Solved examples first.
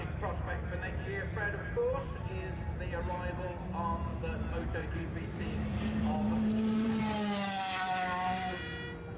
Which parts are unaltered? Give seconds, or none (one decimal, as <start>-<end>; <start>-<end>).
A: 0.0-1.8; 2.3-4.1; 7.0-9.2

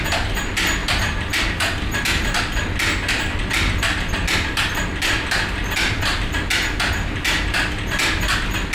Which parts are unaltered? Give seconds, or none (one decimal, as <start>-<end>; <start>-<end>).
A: 0.0-8.7

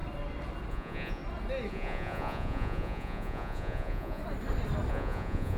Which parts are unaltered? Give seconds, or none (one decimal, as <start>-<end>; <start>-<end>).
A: 0.0-0.7; 1.2-1.7; 4.2-4.9